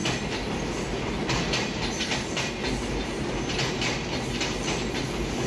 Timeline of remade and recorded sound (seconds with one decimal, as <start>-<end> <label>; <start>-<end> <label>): 0.0-5.5 recorded